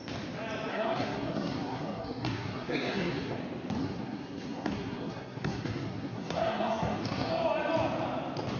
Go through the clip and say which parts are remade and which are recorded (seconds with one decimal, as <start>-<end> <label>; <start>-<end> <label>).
0.0-0.7 recorded; 0.7-3.4 remade; 3.4-3.8 recorded; 3.8-7.3 remade; 7.3-8.6 recorded